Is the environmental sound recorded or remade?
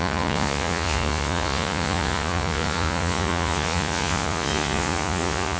remade